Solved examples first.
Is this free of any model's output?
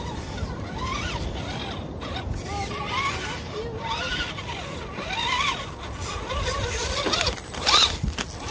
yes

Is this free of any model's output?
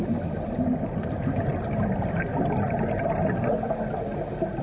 yes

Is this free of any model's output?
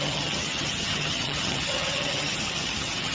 no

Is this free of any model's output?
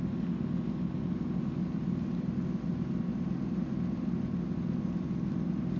yes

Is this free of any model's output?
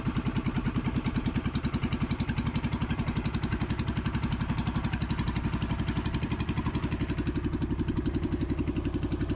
yes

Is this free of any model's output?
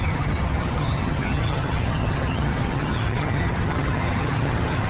no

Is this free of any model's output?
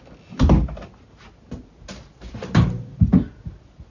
yes